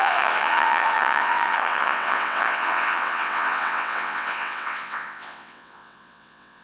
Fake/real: fake